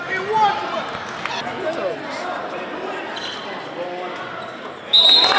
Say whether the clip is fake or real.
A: real